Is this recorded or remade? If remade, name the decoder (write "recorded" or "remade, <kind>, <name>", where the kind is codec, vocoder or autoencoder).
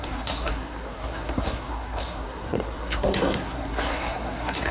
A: remade, codec, SNAC